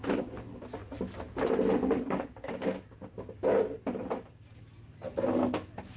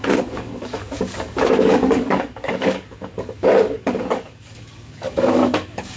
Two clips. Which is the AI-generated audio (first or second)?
second